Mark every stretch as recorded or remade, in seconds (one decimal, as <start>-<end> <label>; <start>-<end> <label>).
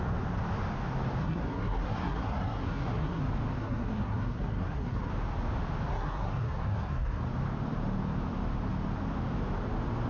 0.0-1.2 recorded; 1.2-3.2 remade; 3.2-3.6 recorded; 3.6-5.1 remade; 5.1-5.9 recorded; 5.9-7.2 remade; 7.2-10.1 recorded